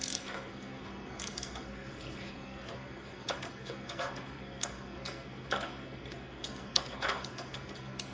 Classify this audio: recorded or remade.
remade